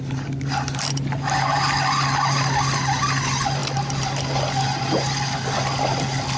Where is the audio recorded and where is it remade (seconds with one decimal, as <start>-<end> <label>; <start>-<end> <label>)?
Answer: 0.0-6.4 recorded